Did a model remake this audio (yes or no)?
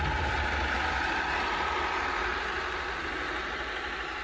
no